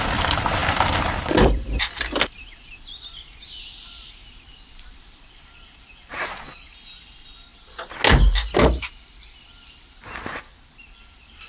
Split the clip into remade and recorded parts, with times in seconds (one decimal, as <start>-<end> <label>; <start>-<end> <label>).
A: 0.0-7.5 remade; 7.5-8.8 recorded; 8.8-11.5 remade